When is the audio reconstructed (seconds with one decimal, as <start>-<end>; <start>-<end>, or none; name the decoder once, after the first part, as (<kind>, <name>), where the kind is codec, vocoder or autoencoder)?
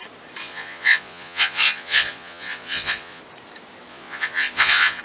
0.4-3.2 (vocoder, Vocos); 3.9-5.0